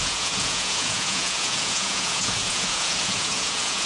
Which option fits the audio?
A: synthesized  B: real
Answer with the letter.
A